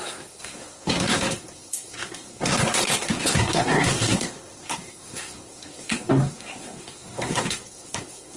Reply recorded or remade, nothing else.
remade